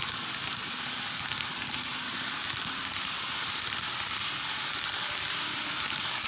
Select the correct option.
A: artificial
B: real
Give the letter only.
B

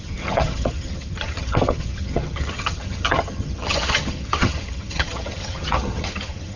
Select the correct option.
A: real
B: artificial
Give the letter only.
B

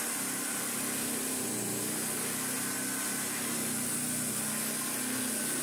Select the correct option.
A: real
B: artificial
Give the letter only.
A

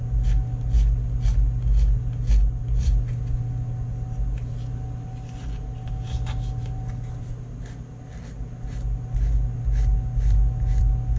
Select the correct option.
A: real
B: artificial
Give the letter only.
A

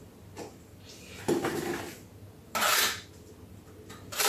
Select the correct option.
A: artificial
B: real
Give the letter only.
B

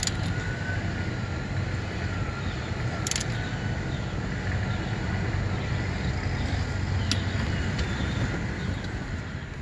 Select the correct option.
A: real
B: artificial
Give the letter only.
A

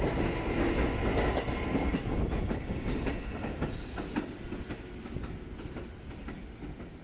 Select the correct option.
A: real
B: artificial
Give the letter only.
A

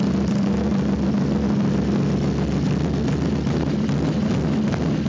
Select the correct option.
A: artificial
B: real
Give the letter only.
B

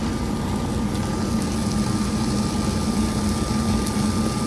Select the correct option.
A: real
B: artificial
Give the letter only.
A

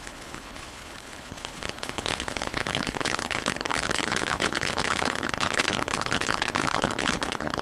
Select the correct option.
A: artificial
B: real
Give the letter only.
A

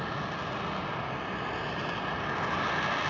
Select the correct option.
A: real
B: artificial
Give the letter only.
A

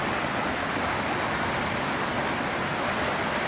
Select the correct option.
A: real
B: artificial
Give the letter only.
A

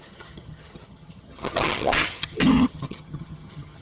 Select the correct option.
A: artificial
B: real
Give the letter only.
A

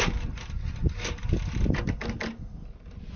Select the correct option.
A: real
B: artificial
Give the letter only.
A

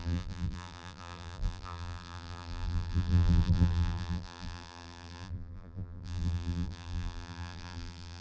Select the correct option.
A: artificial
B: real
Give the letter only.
A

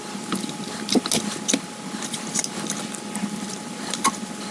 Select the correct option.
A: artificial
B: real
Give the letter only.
B